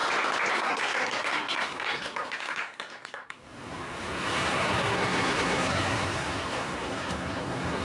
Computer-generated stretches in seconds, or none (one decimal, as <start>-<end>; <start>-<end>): 0.5-7.8